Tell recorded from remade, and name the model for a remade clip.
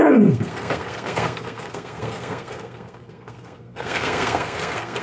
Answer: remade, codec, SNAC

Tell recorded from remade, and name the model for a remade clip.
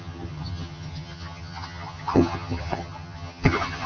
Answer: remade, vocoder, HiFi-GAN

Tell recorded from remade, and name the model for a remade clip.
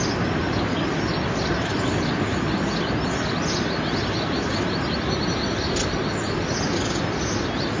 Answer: recorded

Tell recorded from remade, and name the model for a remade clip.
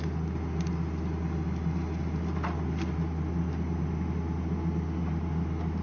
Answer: recorded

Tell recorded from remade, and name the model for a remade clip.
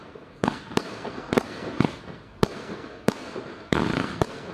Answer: remade, codec, SNAC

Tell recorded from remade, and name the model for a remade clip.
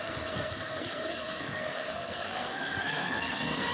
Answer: remade, codec, SNAC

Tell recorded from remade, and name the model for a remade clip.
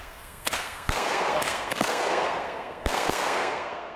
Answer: remade, codec, SNAC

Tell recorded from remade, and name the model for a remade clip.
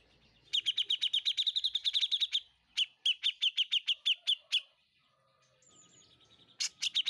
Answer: recorded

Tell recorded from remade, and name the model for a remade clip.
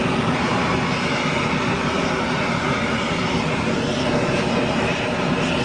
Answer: remade, vocoder, BigVGAN v2